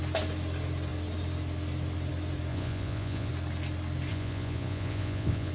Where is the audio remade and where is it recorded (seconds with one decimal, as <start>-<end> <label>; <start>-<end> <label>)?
0.0-2.5 recorded; 2.5-3.3 remade; 3.3-4.1 recorded; 4.1-5.5 remade